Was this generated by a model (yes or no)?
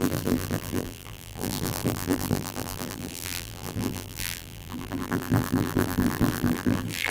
yes